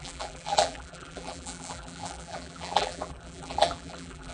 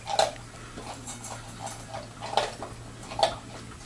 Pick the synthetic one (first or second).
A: first